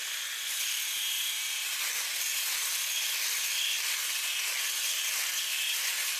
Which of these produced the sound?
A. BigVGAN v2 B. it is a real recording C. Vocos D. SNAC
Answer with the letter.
B